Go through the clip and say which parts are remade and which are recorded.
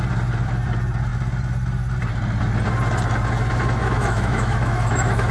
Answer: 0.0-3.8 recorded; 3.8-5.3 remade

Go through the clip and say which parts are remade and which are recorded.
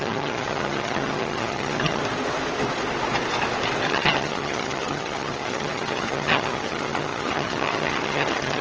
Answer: 0.0-2.0 remade; 2.0-3.9 recorded; 3.9-8.6 remade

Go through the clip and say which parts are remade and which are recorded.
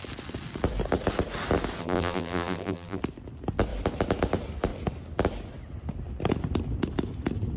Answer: 0.0-1.8 recorded; 1.8-3.0 remade; 3.0-7.6 recorded